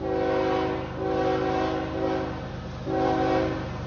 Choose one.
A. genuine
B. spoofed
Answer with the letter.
A